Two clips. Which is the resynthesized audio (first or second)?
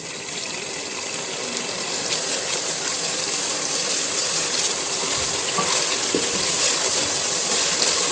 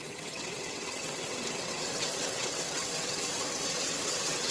second